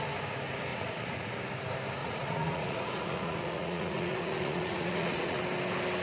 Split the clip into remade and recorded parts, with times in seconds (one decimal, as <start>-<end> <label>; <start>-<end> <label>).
0.0-0.7 recorded; 0.7-1.3 remade; 1.3-2.0 recorded; 2.0-5.4 remade; 5.4-6.0 recorded